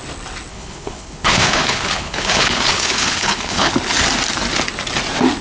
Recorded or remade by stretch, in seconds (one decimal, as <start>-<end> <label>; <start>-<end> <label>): 0.0-0.5 recorded; 0.5-3.7 remade; 3.7-5.4 recorded